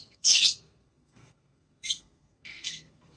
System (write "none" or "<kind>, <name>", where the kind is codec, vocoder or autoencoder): codec, SNAC